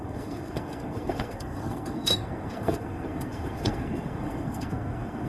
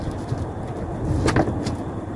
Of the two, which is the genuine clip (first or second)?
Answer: second